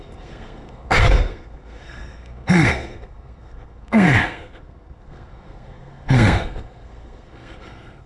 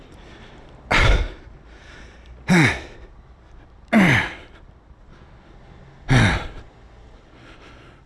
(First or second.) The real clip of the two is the second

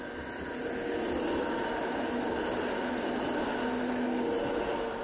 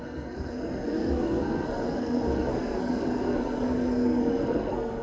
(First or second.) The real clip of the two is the first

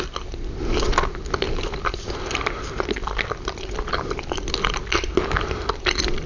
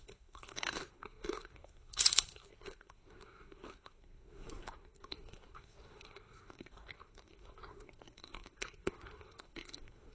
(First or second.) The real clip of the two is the first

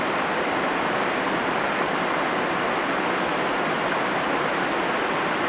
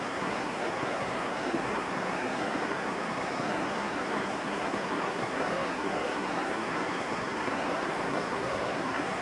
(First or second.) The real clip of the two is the first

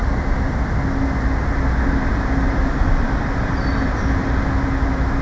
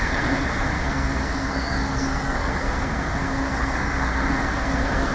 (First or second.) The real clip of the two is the first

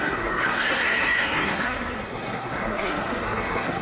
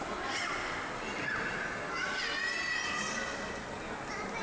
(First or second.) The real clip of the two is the second